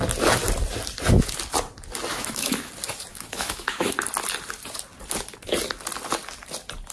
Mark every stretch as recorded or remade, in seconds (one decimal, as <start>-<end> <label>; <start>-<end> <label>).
0.0-2.1 recorded; 2.1-2.7 remade; 2.7-3.1 recorded; 3.1-4.0 remade; 4.0-6.9 recorded